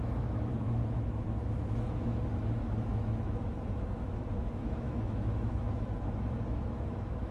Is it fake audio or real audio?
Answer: fake